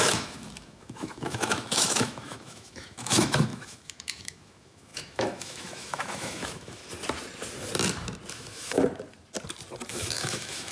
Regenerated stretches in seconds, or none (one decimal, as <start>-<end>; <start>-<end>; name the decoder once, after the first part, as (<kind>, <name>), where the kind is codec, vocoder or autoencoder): 0.0-6.8 (autoencoder, DAC-VAE); 8.3-8.8; 9.9-10.7

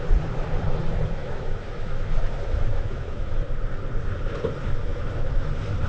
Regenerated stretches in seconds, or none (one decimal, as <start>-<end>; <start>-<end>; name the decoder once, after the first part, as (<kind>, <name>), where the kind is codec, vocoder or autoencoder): 1.2-3.4 (autoencoder, DAC-VAE); 4.9-5.5

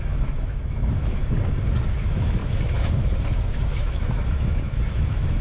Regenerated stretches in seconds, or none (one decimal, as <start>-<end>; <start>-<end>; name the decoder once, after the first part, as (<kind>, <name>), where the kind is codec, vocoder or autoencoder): 0.0-1.2 (autoencoder, DAC-VAE); 2.0-5.4

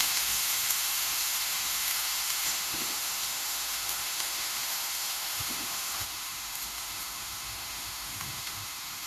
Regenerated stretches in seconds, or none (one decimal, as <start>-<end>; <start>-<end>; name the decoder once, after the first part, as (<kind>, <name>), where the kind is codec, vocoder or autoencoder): 0.0-9.1 (autoencoder, DAC-VAE)

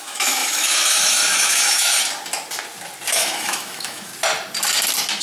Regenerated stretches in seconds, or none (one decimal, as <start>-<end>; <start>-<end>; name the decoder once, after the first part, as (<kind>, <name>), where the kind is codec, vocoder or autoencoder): 0.0-1.9 (autoencoder, DAC-VAE); 3.1-4.1

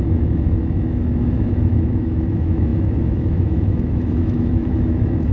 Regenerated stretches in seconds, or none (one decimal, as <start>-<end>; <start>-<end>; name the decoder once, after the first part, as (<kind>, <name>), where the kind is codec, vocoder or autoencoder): 0.0-5.3 (autoencoder, DAC-VAE)

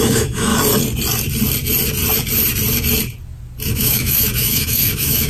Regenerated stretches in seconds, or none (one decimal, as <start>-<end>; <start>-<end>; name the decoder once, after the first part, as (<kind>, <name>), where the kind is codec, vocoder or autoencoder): 0.0-0.5 (autoencoder, DAC-VAE); 3.7-5.3